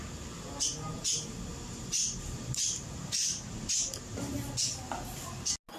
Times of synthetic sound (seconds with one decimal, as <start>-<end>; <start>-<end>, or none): 1.5-4.5